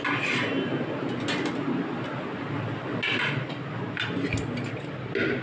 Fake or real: real